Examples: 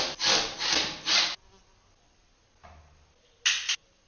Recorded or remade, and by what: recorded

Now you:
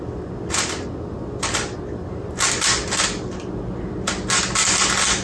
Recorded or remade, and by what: recorded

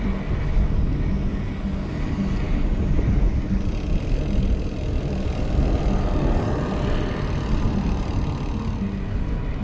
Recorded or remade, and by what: recorded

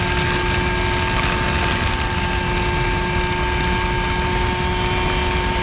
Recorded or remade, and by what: recorded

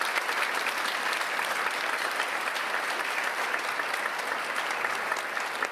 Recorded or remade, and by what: remade, vocoder, BigVGAN v2